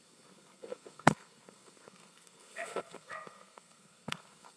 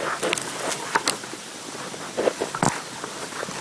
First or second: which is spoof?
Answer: first